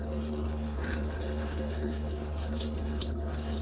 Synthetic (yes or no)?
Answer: yes